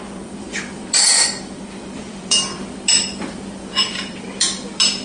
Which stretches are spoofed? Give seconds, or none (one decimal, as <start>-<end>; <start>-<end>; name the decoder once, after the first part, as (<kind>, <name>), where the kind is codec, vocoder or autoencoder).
0.0-5.0 (vocoder, BigVGAN v2)